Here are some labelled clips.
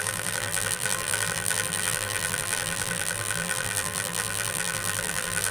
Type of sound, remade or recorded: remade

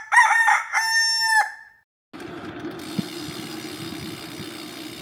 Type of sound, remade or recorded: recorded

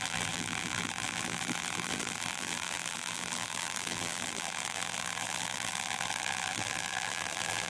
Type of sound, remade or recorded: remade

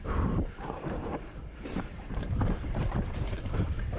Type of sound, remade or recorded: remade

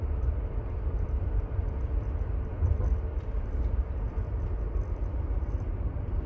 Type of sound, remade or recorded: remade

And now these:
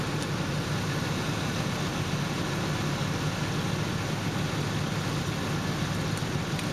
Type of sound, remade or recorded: recorded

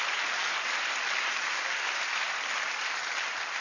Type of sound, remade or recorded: remade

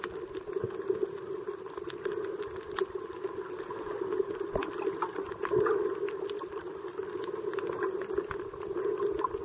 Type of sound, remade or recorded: recorded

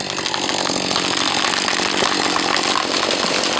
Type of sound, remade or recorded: recorded